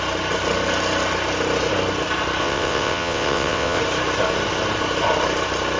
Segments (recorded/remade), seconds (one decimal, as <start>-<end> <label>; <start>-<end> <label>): 0.0-2.4 recorded; 2.4-3.8 remade; 3.8-5.8 recorded